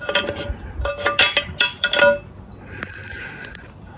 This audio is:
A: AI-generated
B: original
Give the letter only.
B